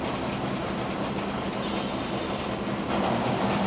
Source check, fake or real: real